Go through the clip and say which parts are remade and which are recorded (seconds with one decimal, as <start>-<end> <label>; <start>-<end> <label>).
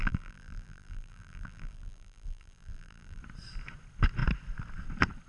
0.0-3.2 remade; 3.2-5.3 recorded